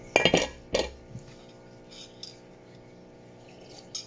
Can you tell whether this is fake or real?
real